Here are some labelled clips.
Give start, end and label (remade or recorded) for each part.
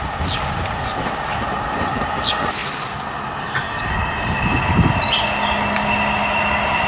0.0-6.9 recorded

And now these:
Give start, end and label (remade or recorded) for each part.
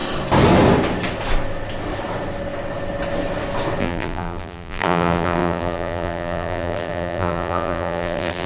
0.0-3.8 recorded; 3.8-8.5 remade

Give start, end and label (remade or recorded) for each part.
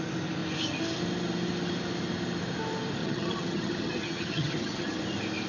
0.0-3.0 recorded; 3.0-5.0 remade; 5.0-5.5 recorded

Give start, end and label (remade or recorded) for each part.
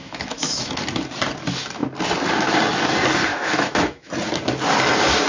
0.0-0.7 remade; 0.7-3.3 recorded; 3.3-4.1 remade; 4.1-5.3 recorded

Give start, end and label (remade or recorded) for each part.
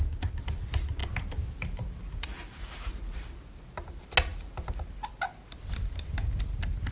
0.0-6.9 recorded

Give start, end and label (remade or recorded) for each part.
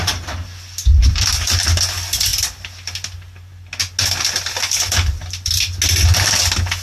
0.0-6.8 recorded